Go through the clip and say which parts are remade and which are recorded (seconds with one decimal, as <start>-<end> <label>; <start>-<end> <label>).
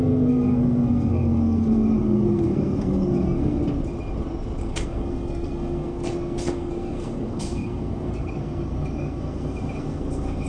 0.0-3.6 remade; 3.6-4.6 recorded; 4.6-10.5 remade